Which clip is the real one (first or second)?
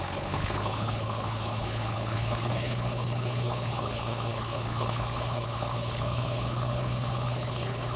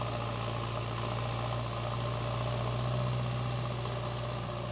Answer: second